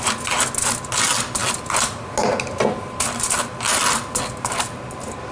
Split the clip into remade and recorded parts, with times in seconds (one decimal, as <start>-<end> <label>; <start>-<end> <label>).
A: 0.0-5.3 recorded